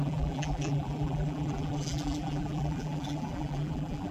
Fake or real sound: fake